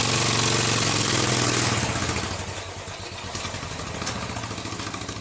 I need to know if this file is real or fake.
real